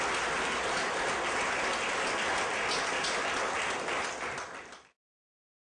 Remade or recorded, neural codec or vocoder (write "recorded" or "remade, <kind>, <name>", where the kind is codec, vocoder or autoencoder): recorded